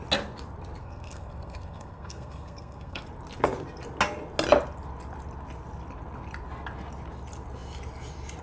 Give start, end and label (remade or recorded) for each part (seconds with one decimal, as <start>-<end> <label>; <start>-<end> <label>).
0.0-0.8 recorded; 0.8-3.0 remade; 3.0-8.4 recorded